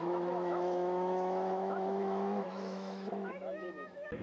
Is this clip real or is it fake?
fake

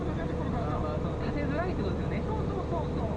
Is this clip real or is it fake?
real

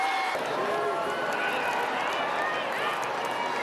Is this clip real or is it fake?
real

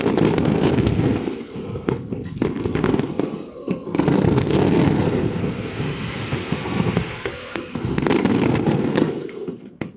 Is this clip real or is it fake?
fake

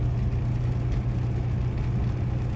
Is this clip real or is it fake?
real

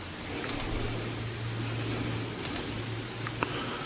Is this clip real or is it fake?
real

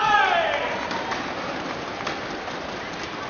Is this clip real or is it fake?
real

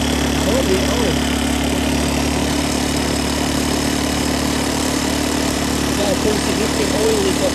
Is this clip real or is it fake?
fake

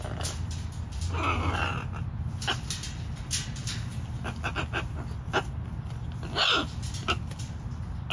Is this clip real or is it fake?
real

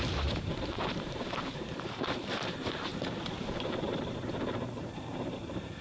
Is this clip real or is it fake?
fake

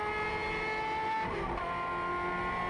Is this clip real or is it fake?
real